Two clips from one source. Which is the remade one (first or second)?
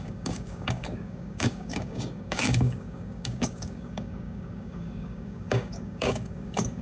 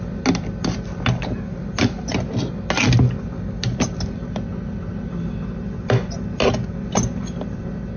first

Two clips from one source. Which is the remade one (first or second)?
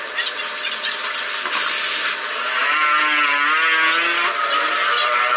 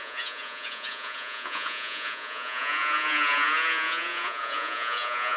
second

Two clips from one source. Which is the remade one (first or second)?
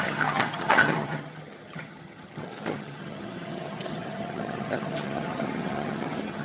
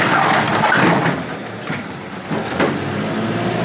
first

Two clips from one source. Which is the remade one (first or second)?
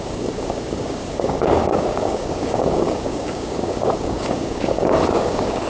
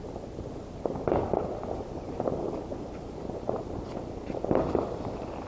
first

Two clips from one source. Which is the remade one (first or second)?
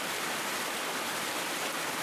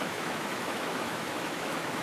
second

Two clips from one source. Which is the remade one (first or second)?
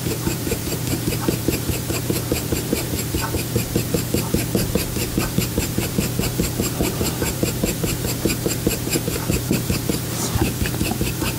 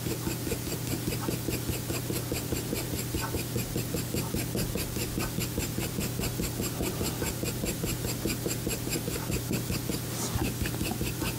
first